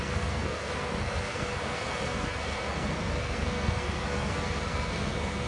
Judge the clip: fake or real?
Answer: fake